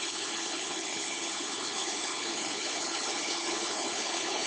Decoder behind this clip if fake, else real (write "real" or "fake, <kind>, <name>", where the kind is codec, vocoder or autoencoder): fake, codec, HILCodec